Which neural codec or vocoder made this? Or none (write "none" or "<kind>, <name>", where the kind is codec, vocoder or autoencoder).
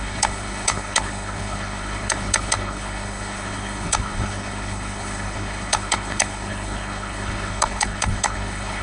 codec, HILCodec